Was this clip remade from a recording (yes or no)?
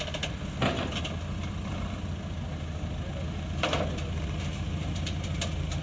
no